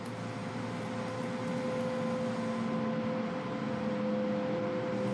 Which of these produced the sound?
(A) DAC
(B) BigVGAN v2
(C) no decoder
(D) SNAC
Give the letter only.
C